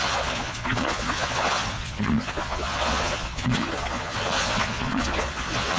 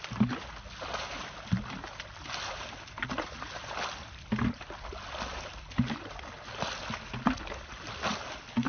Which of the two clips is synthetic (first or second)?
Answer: first